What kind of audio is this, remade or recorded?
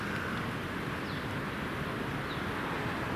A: recorded